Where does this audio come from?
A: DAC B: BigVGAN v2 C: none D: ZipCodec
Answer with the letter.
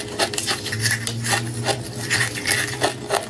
C